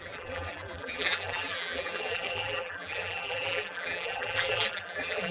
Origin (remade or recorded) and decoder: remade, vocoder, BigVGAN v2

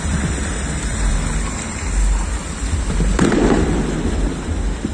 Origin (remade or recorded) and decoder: remade, vocoder, BigVGAN v2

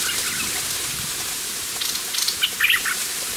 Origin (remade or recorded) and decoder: recorded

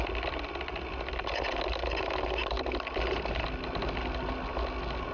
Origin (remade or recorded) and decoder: recorded